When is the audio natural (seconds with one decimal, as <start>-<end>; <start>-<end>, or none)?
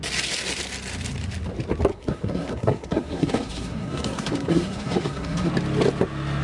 0.0-1.9; 5.5-6.4